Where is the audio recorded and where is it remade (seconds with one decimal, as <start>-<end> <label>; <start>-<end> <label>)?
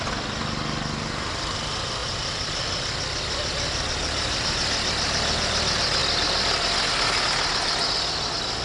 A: 0.0-2.0 recorded; 2.0-2.8 remade; 2.8-8.6 recorded